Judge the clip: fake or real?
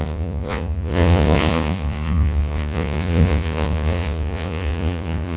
fake